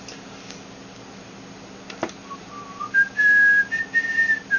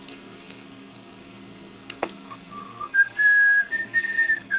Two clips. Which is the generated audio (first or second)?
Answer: second